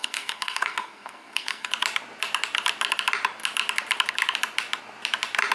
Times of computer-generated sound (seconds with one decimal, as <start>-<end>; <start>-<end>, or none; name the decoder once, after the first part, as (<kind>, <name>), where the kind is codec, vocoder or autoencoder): 0.0-1.7 (codec, SNAC)